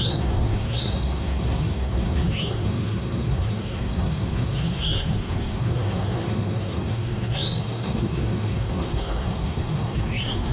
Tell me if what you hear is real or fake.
fake